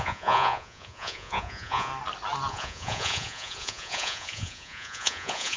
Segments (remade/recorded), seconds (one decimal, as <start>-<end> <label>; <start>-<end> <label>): 0.0-1.9 remade; 1.9-2.5 recorded; 2.5-5.6 remade

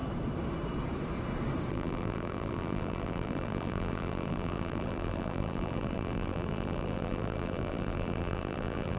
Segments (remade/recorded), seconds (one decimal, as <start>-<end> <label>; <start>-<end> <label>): 0.0-1.7 recorded; 1.7-9.0 remade

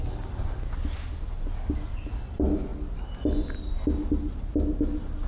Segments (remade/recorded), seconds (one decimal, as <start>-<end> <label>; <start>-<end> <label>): 0.0-5.3 recorded

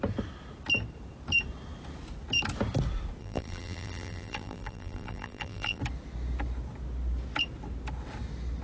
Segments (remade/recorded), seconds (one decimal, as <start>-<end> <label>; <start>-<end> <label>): 0.0-3.2 recorded; 3.2-5.8 remade; 5.8-8.6 recorded